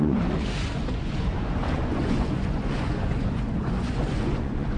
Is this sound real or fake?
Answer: fake